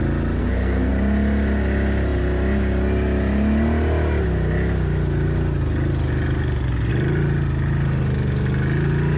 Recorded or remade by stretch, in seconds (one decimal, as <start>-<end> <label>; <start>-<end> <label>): 0.0-0.4 recorded; 0.4-0.9 remade; 0.9-9.2 recorded